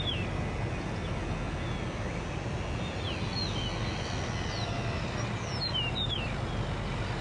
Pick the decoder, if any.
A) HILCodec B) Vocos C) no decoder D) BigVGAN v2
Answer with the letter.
C